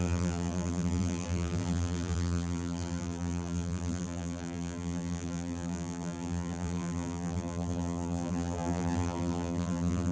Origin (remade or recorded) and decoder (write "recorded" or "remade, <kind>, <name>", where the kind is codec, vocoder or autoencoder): remade, vocoder, BigVGAN v2